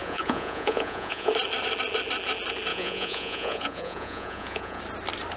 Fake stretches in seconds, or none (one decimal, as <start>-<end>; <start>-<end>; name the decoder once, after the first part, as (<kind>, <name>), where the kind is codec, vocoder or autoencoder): 0.0-1.3 (vocoder, Vocos); 2.7-4.8